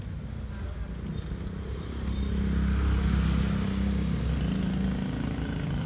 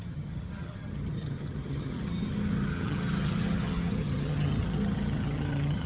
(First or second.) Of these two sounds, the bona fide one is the first